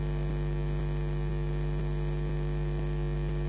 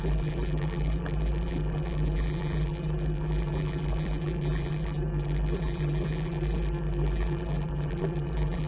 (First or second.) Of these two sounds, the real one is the first